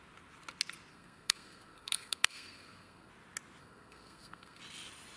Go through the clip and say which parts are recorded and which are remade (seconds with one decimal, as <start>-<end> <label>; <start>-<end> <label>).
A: 0.0-0.9 recorded; 0.9-3.1 remade; 3.1-3.6 recorded; 3.6-4.6 remade; 4.6-5.2 recorded

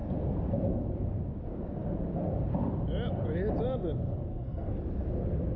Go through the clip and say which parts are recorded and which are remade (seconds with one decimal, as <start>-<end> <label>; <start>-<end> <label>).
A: 0.0-4.3 recorded; 4.3-4.8 remade; 4.8-5.6 recorded

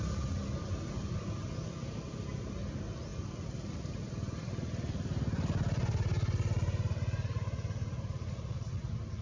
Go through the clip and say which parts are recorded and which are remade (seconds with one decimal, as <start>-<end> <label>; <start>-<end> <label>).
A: 0.0-9.2 recorded

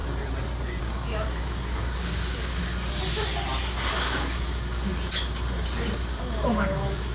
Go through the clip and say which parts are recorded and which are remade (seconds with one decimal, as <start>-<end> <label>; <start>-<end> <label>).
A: 0.0-0.8 recorded; 0.8-2.6 remade; 2.6-3.9 recorded; 3.9-4.9 remade; 4.9-6.2 recorded; 6.2-7.1 remade

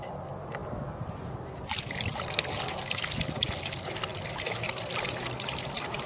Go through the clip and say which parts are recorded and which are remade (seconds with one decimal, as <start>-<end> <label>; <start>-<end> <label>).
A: 0.0-4.1 recorded; 4.1-6.1 remade

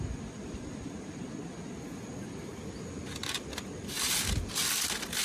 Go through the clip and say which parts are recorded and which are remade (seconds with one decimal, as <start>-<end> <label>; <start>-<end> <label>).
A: 0.0-5.2 recorded

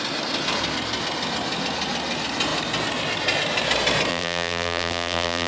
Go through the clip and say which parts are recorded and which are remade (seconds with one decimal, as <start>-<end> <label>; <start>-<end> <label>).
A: 0.0-4.1 recorded; 4.1-5.5 remade

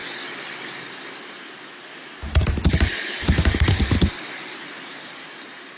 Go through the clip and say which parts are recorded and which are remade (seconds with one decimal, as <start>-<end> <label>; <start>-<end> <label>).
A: 0.0-5.8 recorded